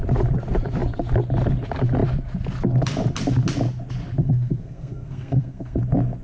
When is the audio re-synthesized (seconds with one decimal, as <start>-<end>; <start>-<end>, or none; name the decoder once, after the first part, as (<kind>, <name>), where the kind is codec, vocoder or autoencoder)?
4.2-5.8 (codec, SNAC)